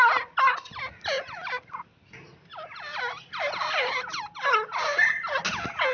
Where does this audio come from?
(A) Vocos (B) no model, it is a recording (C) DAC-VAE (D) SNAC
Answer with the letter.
B